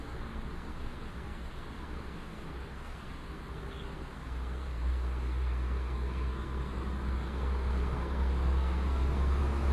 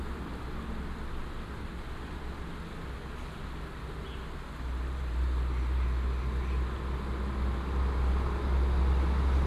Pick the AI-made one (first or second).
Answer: first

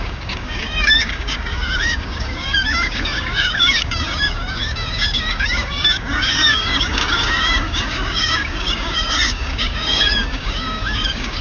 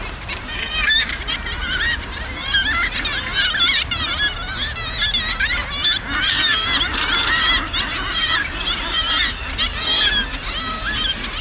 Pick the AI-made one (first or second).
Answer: first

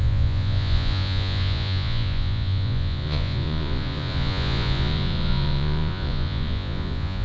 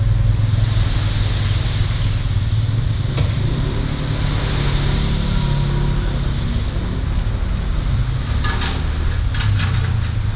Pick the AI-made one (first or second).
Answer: first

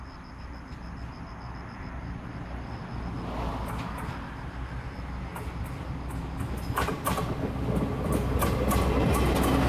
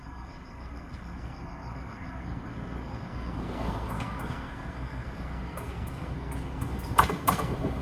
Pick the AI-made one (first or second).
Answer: second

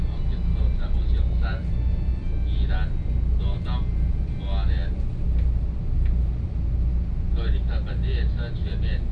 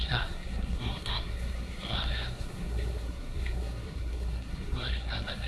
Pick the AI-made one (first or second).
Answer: second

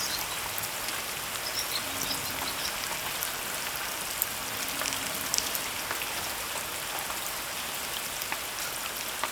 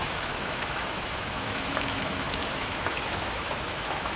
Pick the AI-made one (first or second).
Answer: second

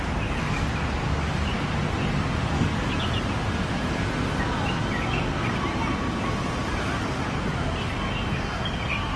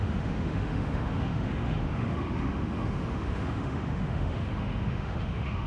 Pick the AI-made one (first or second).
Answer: second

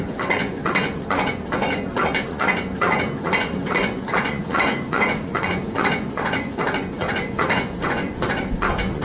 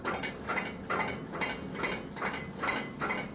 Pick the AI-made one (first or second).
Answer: first